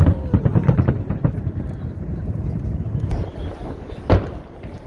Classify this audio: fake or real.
real